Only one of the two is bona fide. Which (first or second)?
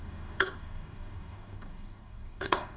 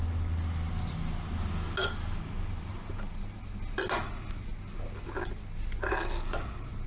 second